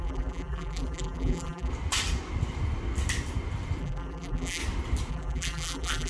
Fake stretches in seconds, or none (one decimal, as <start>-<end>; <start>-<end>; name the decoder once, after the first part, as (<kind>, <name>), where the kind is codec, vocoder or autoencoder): 0.0-1.7 (vocoder, BigVGAN v2); 3.8-4.6; 5.1-6.1